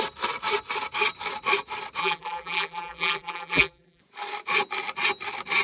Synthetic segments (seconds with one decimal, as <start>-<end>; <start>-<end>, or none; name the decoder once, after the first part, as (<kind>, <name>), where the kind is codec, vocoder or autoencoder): 2.0-4.0 (vocoder, BigVGAN v2)